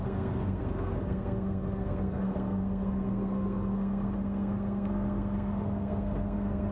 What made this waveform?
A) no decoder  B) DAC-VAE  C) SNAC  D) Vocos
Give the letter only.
C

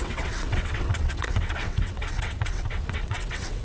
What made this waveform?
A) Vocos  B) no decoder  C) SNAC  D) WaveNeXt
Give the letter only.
D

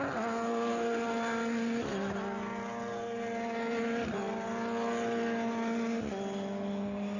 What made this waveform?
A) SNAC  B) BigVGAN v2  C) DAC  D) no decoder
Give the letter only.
D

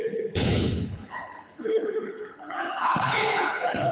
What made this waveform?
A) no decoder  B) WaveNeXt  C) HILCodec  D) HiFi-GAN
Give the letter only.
C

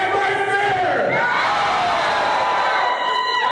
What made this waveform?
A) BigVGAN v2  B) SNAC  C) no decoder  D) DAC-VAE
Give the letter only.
A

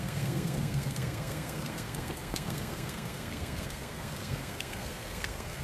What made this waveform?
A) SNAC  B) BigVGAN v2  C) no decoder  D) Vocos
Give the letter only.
A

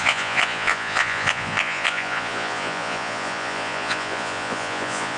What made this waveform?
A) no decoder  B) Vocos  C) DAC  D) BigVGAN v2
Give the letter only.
B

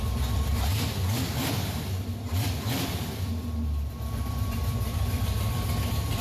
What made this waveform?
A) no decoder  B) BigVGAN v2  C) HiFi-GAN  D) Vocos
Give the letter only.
B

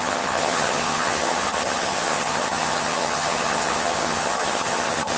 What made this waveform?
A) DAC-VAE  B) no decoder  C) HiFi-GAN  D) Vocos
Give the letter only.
C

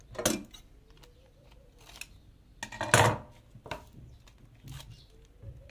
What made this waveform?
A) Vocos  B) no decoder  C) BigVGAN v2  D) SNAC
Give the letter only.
B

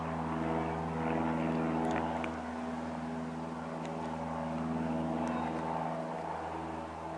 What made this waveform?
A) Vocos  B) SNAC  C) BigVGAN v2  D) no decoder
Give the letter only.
D